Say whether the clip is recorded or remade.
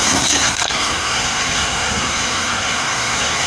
remade